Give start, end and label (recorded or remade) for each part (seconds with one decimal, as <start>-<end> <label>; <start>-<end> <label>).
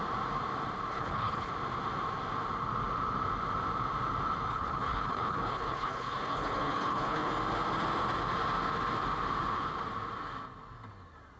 0.0-0.9 recorded; 0.9-1.5 remade; 1.5-4.5 recorded; 4.5-7.3 remade; 7.3-11.4 recorded